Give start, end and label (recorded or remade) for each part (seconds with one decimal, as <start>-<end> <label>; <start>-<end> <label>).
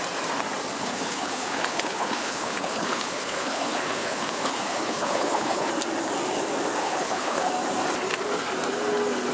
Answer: 0.0-0.8 recorded; 0.8-5.7 remade; 5.7-6.8 recorded; 6.8-7.5 remade; 7.5-9.3 recorded